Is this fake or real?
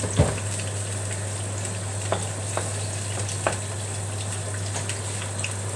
real